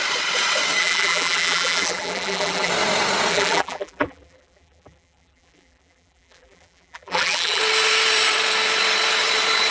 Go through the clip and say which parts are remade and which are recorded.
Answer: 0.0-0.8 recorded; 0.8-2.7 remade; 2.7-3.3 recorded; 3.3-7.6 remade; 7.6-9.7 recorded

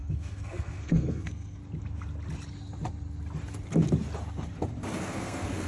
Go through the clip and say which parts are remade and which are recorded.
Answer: 0.0-1.6 remade; 1.6-5.0 recorded; 5.0-5.7 remade